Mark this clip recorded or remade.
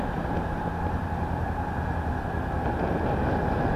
recorded